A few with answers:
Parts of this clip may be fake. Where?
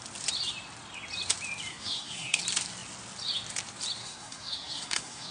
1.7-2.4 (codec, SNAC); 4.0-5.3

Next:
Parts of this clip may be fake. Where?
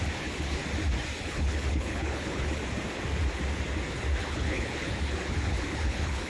0.0-0.6 (codec, HILCodec); 1.2-2.6; 4.2-6.3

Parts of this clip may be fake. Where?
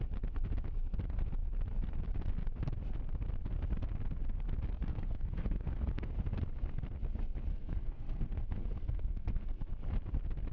4.9-6.1 (codec, SNAC); 7.5-9.7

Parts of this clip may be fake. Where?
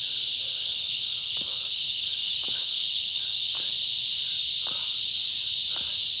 0.5-3.6 (codec, HILCodec)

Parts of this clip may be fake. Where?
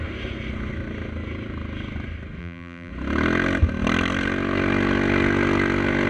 2.4-2.9 (vocoder, BigVGAN v2)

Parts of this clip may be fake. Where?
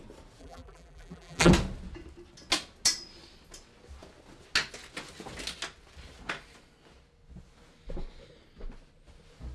0.4-1.5 (vocoder, BigVGAN v2)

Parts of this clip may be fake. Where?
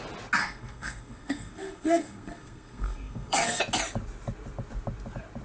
0.4-3.6 (codec, SNAC)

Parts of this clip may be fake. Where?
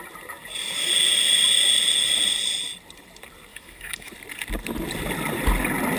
3.5-4.1 (autoencoder, DAC-VAE)